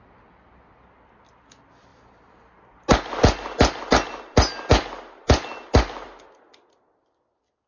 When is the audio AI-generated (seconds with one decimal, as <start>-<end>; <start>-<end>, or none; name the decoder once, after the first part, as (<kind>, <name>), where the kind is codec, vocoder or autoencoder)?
none